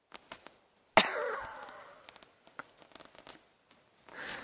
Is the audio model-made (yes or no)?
no